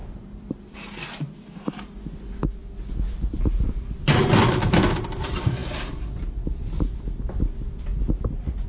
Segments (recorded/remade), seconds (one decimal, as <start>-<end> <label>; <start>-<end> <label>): 0.0-1.4 remade; 1.4-8.7 recorded